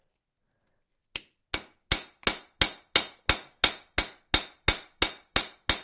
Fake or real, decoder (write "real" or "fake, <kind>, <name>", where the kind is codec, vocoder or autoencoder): real